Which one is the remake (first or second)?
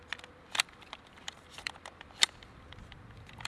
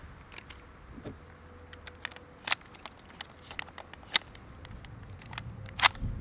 first